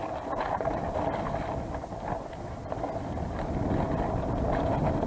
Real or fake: real